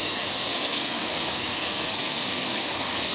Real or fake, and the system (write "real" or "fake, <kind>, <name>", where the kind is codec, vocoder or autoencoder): fake, codec, SNAC